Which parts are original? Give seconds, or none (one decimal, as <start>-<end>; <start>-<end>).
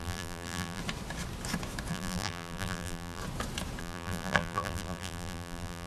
0.8-1.9; 3.2-3.8